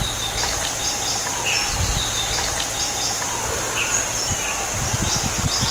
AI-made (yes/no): no